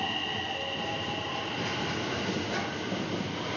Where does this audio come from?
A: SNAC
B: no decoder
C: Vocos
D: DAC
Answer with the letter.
B